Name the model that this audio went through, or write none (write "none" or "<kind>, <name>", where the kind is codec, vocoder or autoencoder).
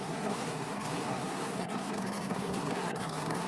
codec, SNAC